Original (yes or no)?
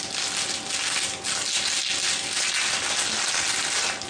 yes